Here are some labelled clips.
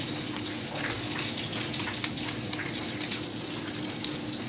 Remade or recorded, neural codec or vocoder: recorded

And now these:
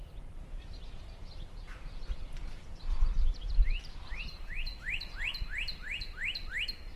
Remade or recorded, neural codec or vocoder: remade, vocoder, BigVGAN v2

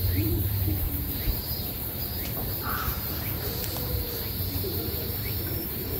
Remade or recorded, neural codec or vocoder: remade, vocoder, BigVGAN v2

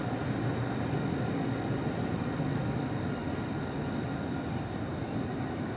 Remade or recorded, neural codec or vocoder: recorded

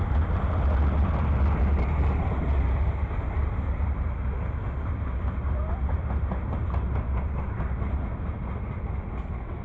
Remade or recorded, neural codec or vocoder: recorded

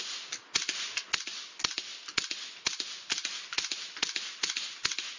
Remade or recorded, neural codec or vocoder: recorded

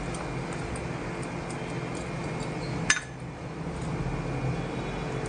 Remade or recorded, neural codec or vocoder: recorded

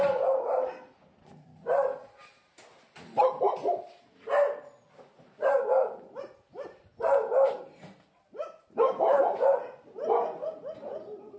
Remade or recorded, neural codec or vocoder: recorded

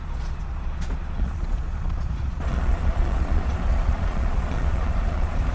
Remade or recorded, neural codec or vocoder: remade, vocoder, Vocos